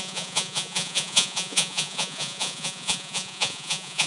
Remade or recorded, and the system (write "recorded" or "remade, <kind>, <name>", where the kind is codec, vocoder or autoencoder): remade, vocoder, Vocos